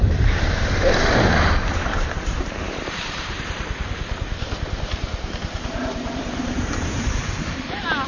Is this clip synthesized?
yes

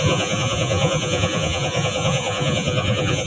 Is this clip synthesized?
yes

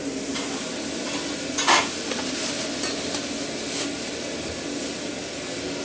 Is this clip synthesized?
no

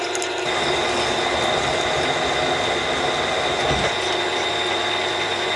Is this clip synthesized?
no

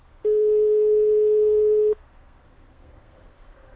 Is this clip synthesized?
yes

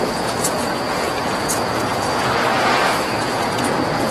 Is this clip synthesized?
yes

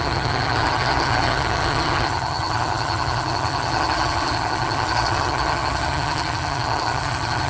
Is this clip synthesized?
yes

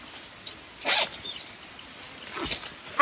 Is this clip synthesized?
no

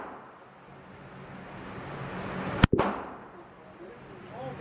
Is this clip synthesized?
no